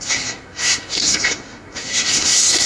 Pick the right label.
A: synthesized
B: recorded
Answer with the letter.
A